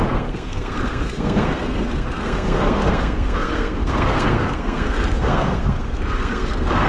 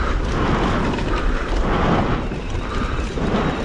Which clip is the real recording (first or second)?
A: second